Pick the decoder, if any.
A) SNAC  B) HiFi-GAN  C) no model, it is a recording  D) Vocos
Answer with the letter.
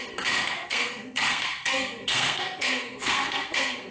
A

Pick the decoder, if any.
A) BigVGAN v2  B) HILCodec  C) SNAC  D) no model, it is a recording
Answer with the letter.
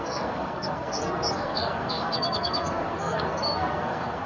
C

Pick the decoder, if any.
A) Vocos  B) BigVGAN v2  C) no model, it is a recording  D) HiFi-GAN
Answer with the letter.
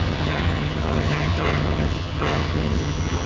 D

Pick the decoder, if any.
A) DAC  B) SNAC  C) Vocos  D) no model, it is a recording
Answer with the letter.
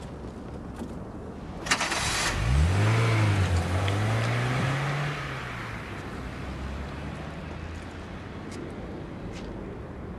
D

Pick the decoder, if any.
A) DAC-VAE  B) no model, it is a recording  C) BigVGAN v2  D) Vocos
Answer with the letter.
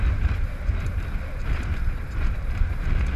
B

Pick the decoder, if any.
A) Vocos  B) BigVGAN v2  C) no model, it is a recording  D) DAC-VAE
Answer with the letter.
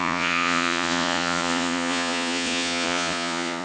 A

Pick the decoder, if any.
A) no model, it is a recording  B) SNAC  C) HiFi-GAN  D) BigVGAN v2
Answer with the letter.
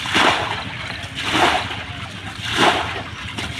A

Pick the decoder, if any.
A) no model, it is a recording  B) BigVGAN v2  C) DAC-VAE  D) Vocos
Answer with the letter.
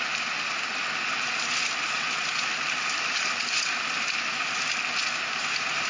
A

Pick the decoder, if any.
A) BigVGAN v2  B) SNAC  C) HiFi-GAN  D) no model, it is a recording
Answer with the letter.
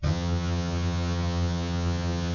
C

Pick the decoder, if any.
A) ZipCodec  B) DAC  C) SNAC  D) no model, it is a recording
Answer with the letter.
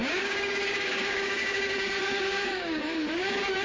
B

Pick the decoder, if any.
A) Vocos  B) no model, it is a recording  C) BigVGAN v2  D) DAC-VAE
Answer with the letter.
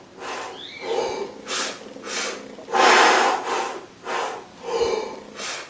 B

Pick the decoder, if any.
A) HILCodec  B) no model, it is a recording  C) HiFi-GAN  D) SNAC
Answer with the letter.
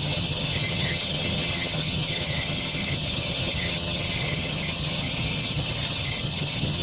C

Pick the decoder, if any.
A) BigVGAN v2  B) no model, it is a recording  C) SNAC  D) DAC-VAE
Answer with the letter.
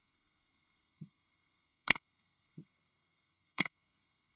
C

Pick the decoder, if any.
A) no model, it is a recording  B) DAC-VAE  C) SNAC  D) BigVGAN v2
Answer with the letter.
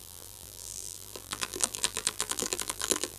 D